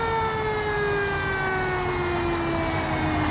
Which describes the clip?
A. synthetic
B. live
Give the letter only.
B